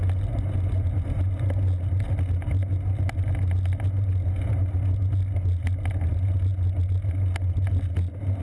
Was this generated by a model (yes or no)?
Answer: no